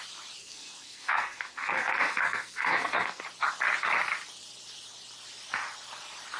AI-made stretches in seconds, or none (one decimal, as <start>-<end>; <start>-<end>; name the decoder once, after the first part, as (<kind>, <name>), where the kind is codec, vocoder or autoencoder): 0.4-3.2 (codec, SNAC)